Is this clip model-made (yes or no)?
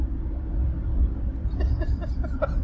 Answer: no